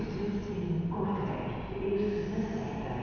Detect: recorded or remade recorded